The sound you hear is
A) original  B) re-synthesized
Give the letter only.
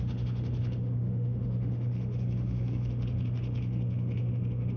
B